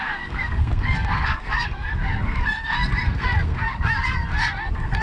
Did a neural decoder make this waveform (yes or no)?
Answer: yes